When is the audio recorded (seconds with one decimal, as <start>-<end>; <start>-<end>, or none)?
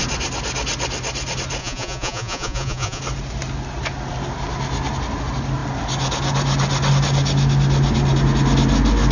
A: 0.0-1.6; 3.0-9.1